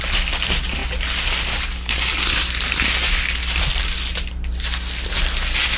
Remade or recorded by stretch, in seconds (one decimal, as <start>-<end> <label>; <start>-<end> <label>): 0.0-5.8 recorded